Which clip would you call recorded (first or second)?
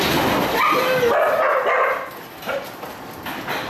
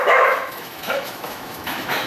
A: first